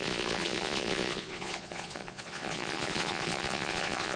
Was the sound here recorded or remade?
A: remade